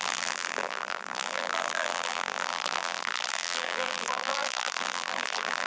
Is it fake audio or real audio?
fake